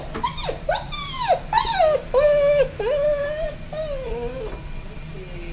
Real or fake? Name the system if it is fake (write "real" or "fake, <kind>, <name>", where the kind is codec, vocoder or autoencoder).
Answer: real